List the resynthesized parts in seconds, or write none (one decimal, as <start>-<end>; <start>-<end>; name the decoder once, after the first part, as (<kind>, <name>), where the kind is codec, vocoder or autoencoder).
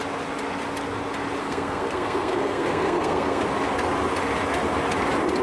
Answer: 1.4-3.4 (codec, SNAC)